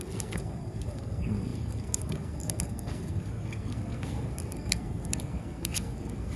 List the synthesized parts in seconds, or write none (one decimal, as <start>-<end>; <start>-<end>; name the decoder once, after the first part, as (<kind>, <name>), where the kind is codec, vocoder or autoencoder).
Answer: 0.0-6.4 (codec, SNAC)